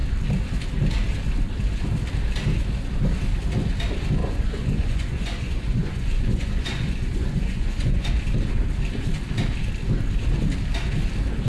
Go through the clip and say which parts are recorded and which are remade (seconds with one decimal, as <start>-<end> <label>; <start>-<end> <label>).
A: 0.0-4.2 recorded; 4.2-8.1 remade; 8.1-11.5 recorded

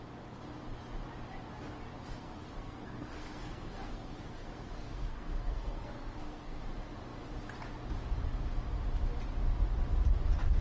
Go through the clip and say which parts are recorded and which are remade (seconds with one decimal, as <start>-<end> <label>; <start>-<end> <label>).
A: 0.0-2.1 recorded; 2.1-6.6 remade; 6.6-10.6 recorded